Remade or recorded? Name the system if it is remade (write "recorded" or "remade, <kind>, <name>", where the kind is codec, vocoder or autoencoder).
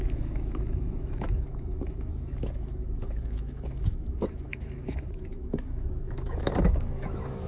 remade, autoencoder, DAC-VAE